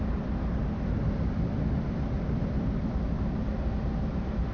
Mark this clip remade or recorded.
recorded